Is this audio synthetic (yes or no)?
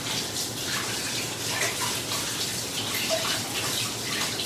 no